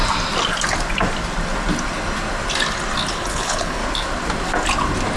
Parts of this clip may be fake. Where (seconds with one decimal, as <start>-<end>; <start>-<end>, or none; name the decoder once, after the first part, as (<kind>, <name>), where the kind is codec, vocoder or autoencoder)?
3.1-3.8 (codec, HILCodec)